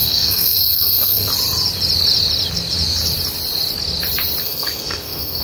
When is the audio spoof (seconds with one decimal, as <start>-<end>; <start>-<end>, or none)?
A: 0.0-1.3; 4.4-5.4